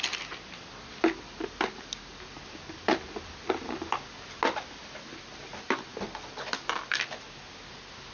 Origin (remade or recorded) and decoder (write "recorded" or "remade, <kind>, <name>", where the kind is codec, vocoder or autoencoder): recorded